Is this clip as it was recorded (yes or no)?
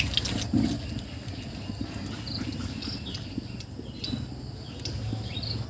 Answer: yes